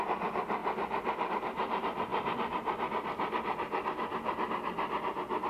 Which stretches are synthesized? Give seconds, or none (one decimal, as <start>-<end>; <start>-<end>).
none